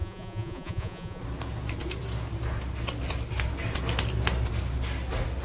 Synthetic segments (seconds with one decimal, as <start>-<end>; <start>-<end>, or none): 0.0-1.2

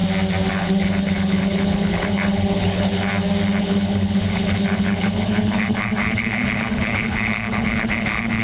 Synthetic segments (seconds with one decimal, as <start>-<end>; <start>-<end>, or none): 0.5-3.1; 3.6-8.4

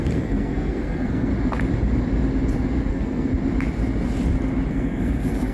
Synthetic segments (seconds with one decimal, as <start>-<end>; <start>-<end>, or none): 0.0-1.3; 2.9-3.3; 4.7-5.5

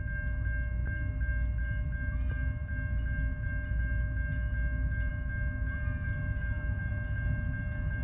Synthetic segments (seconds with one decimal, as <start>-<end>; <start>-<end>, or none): none

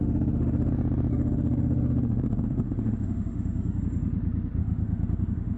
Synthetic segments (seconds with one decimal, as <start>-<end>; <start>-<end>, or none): 0.0-0.7; 1.1-3.8; 4.6-5.6

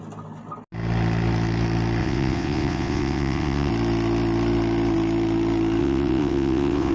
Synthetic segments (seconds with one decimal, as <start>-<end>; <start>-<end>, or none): 2.0-3.7; 5.8-6.9

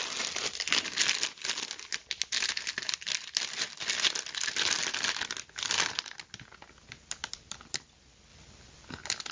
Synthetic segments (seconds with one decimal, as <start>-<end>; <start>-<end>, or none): none

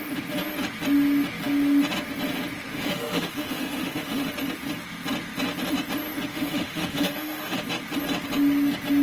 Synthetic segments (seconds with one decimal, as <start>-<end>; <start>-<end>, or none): 2.7-4.3; 6.3-7.6